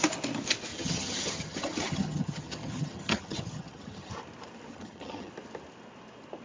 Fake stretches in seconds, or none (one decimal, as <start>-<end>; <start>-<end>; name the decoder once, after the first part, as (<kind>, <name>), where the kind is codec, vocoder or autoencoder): 0.7-4.1 (vocoder, HiFi-GAN); 4.7-5.3